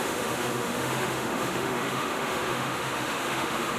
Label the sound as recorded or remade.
remade